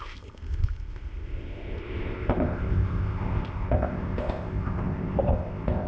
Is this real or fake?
fake